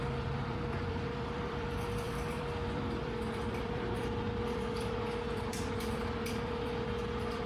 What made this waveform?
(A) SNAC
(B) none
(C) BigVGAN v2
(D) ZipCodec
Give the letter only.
C